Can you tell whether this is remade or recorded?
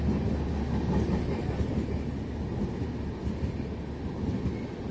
recorded